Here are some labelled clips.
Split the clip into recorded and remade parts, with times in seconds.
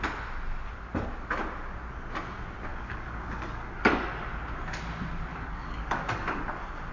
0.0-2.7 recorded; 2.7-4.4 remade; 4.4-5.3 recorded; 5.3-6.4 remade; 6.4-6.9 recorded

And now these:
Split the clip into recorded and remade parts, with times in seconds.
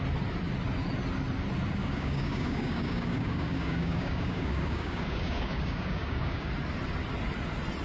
0.0-1.8 recorded; 1.8-6.5 remade; 6.5-7.8 recorded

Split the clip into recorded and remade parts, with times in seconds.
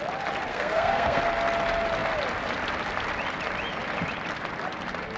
0.0-0.5 recorded; 0.5-1.2 remade; 1.2-5.2 recorded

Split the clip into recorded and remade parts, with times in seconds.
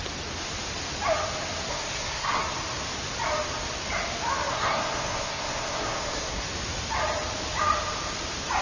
0.0-1.7 recorded; 1.7-2.4 remade; 2.4-4.5 recorded; 4.5-6.4 remade; 6.4-8.6 recorded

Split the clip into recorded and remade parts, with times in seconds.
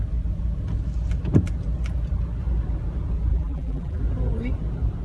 0.0-3.3 recorded; 3.3-4.0 remade; 4.0-5.0 recorded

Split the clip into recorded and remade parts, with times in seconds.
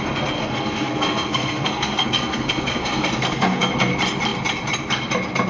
0.0-0.4 recorded; 0.4-3.7 remade; 3.7-5.5 recorded